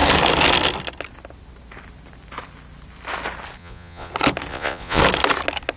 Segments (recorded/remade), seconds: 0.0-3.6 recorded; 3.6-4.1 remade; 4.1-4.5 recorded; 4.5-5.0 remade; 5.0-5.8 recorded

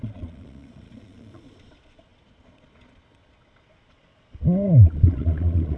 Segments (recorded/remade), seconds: 0.0-5.8 remade

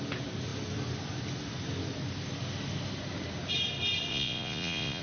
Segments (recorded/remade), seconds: 0.0-4.1 recorded; 4.1-5.0 remade

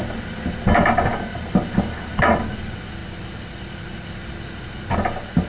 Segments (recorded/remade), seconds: 0.0-5.5 recorded

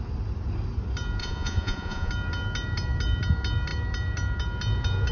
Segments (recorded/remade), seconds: 0.0-1.2 recorded; 1.2-2.1 remade; 2.1-5.1 recorded

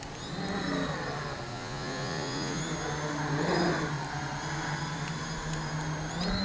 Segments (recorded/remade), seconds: 0.0-1.5 recorded; 1.5-2.6 remade; 2.6-6.4 recorded